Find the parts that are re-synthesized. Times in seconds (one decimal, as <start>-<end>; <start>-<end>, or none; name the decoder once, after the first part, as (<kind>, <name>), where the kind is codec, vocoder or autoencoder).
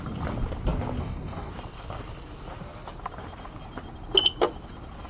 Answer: 1.0-1.5 (codec, DAC)